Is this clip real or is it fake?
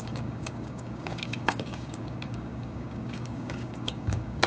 fake